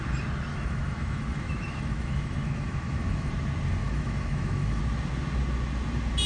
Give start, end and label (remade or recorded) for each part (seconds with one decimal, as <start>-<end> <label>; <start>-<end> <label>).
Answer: 0.0-0.5 recorded; 0.5-3.3 remade; 3.3-3.8 recorded; 3.8-4.8 remade; 4.8-6.3 recorded